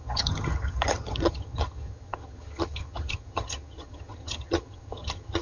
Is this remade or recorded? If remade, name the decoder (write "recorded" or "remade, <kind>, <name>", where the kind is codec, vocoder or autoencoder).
remade, vocoder, HiFi-GAN